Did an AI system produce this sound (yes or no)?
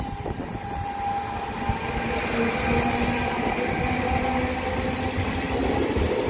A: no